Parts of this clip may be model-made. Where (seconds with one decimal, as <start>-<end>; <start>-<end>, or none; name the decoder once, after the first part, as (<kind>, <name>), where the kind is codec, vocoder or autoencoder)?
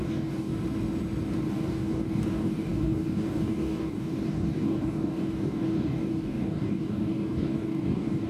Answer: 0.0-0.5 (codec, DAC); 1.5-8.3